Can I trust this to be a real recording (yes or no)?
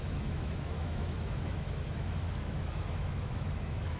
no